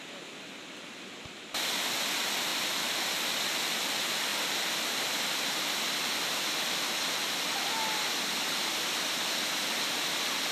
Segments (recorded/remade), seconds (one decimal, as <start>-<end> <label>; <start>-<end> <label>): 0.0-2.5 recorded; 2.5-3.1 remade; 3.1-4.3 recorded; 4.3-6.7 remade; 6.7-10.5 recorded